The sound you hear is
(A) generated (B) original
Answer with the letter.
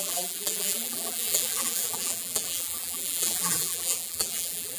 A